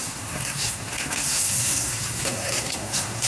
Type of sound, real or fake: fake